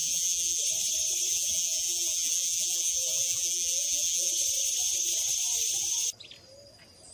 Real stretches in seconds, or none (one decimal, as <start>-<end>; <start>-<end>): 0.6-1.3; 4.3-7.1